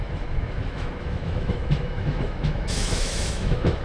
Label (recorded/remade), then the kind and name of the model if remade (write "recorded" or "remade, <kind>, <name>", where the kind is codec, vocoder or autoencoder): remade, autoencoder, DAC-VAE